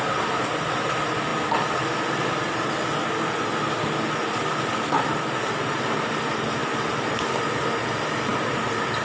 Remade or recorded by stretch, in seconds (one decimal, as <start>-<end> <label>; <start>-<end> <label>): 0.0-9.0 recorded